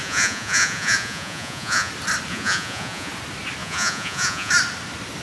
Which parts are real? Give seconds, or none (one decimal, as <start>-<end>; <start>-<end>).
1.9-2.3; 3.1-3.6; 4.5-5.2